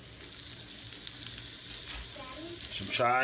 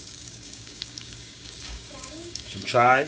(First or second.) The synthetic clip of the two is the second